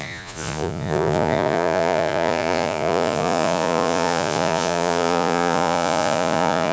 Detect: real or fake fake